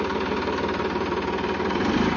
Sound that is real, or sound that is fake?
fake